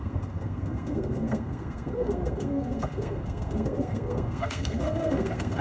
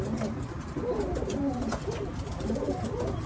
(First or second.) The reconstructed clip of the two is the first